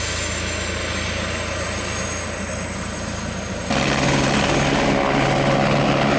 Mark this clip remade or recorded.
recorded